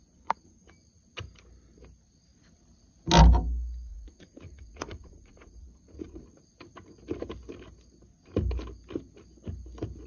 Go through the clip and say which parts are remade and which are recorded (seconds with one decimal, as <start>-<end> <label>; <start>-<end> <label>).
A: 0.0-0.7 remade; 0.7-3.9 recorded; 3.9-6.2 remade; 6.2-10.1 recorded